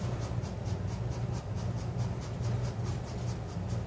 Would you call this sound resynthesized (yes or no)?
no